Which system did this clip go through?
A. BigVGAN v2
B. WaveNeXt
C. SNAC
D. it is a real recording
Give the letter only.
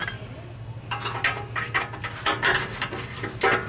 D